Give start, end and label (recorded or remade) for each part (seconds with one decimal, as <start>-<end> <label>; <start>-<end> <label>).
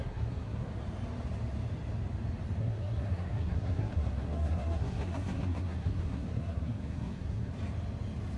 0.0-0.7 remade; 0.7-2.6 recorded; 2.6-7.5 remade; 7.5-8.4 recorded